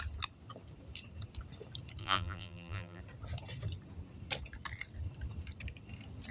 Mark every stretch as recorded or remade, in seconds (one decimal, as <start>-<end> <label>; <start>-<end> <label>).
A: 0.0-2.0 recorded; 2.0-3.0 remade; 3.0-6.3 recorded